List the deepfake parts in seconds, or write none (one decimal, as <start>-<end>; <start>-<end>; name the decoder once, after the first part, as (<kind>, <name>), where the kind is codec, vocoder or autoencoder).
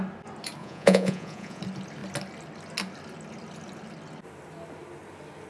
0.6-1.6 (vocoder, Vocos)